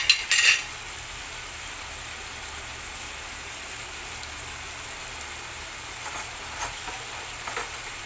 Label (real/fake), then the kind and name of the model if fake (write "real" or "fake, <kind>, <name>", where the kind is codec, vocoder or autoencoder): real